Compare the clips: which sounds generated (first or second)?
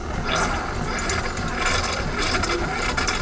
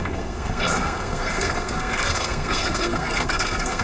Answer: second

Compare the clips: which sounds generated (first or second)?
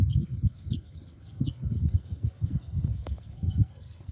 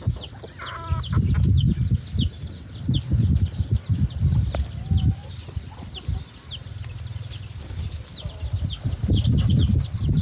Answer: first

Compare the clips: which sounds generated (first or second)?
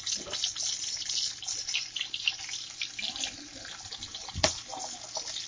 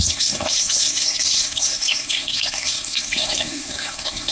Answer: second